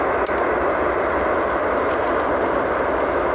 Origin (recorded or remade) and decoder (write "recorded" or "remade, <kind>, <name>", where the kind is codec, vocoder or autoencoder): recorded